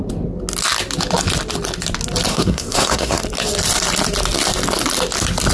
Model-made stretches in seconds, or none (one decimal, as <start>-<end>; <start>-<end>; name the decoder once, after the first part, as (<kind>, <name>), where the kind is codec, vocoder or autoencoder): 2.3-3.2 (codec, SNAC)